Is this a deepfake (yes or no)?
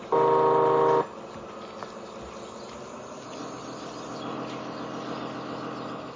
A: no